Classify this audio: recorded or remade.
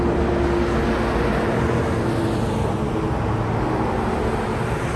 recorded